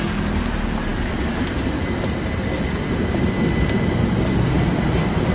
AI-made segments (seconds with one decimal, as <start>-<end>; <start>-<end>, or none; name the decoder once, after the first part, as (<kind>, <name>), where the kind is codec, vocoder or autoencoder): none